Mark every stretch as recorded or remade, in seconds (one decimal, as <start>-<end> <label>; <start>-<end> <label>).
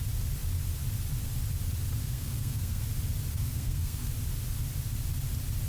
0.0-2.0 recorded; 2.0-2.8 remade; 2.8-3.3 recorded; 3.3-4.1 remade; 4.1-5.7 recorded